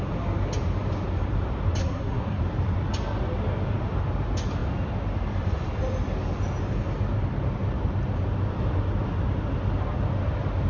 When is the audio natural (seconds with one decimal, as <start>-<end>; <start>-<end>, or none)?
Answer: 0.0-1.8; 2.4-10.7